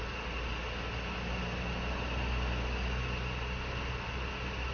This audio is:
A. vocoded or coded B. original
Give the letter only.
B